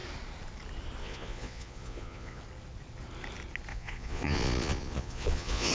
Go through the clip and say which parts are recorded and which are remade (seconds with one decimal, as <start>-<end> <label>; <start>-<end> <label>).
0.0-1.0 recorded; 1.0-2.4 remade; 2.4-3.7 recorded; 3.7-5.7 remade